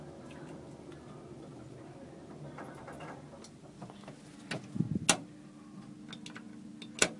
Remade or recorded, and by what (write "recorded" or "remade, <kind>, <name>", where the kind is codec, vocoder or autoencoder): recorded